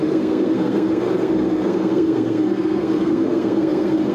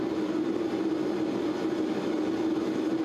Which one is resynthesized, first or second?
first